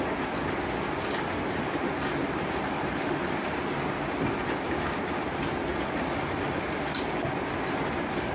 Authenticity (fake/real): real